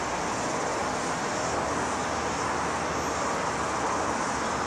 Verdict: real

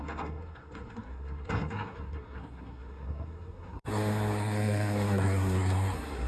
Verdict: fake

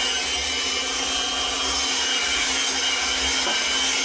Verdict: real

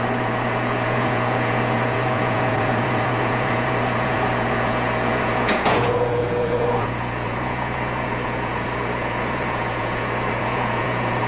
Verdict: fake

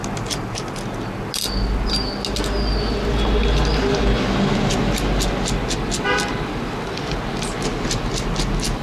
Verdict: real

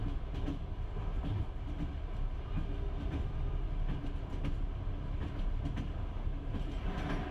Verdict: real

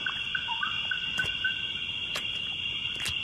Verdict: real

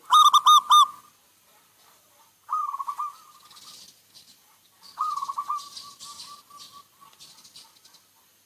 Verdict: real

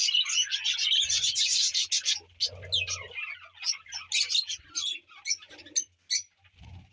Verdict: real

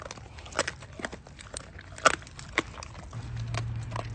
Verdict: real